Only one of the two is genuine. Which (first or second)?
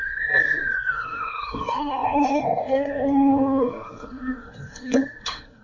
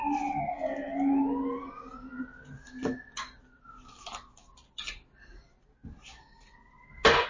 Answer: second